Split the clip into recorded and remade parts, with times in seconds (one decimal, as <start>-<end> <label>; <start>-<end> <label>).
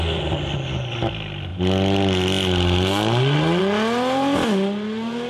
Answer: 0.0-5.3 recorded